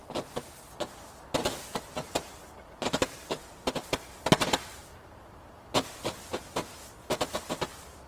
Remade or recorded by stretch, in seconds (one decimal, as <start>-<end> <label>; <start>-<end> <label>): 0.0-8.1 recorded